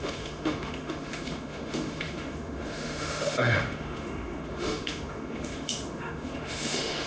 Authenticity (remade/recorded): remade